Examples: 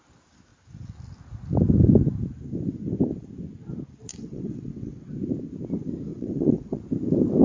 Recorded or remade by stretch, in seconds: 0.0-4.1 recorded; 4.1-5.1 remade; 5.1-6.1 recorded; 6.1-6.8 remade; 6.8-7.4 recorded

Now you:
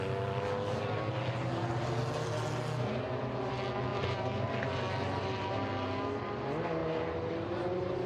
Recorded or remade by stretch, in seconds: 0.0-3.9 recorded; 3.9-4.5 remade; 4.5-8.1 recorded